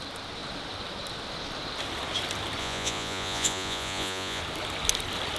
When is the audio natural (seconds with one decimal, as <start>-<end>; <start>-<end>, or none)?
0.0-2.6; 4.4-5.4